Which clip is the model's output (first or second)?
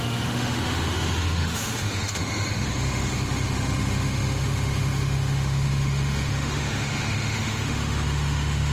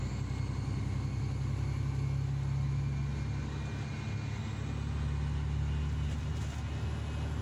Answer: first